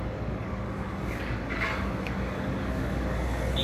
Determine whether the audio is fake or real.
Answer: fake